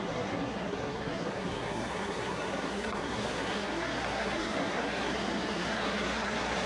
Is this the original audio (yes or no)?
no